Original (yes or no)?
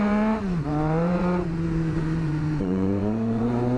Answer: no